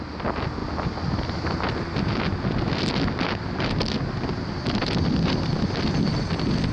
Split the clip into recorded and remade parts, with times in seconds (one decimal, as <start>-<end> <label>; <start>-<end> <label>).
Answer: 0.0-6.7 recorded